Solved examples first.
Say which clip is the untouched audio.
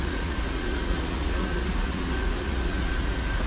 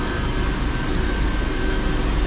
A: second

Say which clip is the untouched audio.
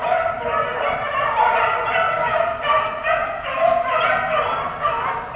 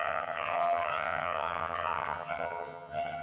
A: first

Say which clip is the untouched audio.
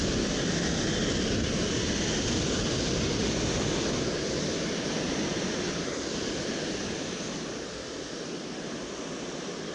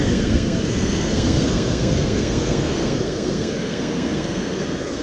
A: first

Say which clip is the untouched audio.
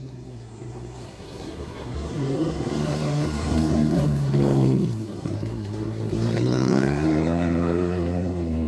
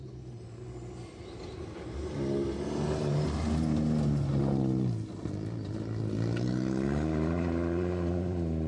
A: second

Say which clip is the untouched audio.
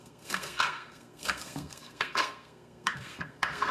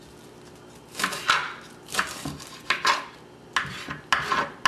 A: second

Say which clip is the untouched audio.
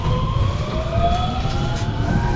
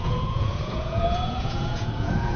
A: first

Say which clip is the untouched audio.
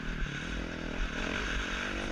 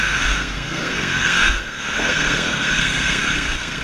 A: first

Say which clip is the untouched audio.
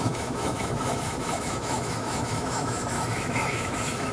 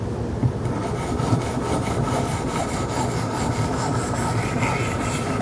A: second